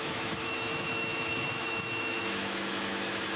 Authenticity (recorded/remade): remade